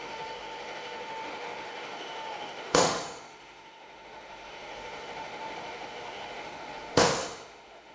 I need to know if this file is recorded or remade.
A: remade